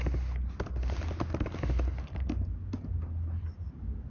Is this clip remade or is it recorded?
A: recorded